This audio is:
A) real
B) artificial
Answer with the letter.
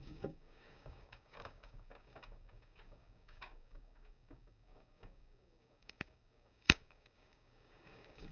B